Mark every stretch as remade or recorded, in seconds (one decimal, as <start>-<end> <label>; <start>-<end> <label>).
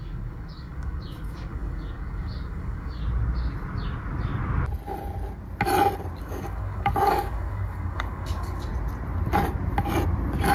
0.0-3.0 remade; 3.0-6.2 recorded; 6.2-8.7 remade; 8.7-10.5 recorded